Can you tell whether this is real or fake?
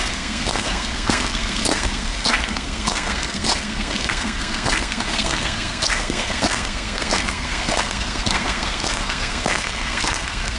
fake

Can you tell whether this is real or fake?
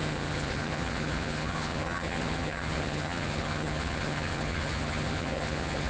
fake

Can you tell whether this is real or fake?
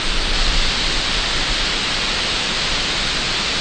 real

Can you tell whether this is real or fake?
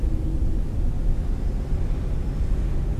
real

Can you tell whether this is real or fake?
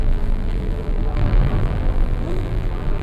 fake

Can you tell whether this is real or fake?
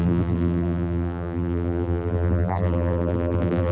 fake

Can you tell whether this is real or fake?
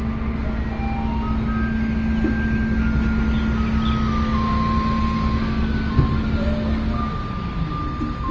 real